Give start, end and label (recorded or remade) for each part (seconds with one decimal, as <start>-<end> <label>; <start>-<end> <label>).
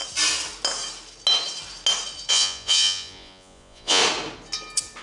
0.0-2.3 recorded; 2.3-4.0 remade; 4.0-5.0 recorded